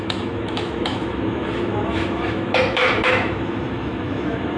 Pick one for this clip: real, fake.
fake